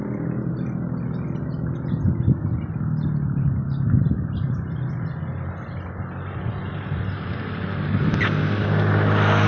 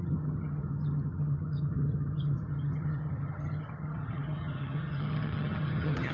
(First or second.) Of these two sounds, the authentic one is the first